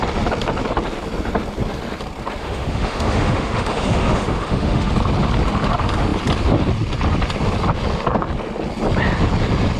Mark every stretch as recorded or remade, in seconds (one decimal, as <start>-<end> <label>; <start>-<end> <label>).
0.0-2.4 recorded; 2.4-4.9 remade; 4.9-9.8 recorded